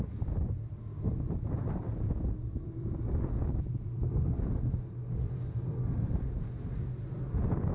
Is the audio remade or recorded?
remade